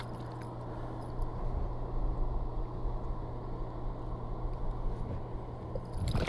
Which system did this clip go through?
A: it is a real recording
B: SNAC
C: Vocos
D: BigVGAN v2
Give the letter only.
A